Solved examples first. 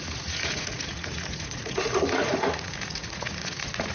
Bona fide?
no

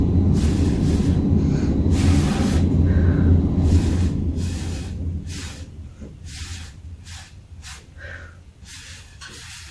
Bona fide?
yes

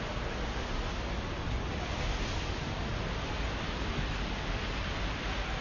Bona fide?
yes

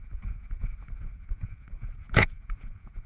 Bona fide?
no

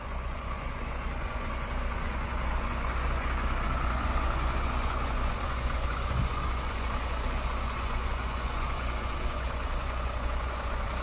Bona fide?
no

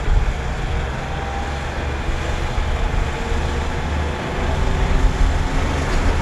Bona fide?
yes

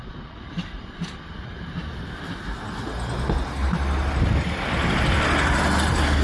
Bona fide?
yes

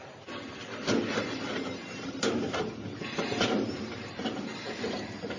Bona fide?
yes